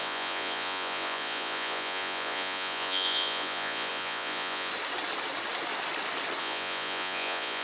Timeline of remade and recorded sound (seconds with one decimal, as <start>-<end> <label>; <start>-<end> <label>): 0.0-4.7 remade; 4.7-6.4 recorded; 6.4-7.6 remade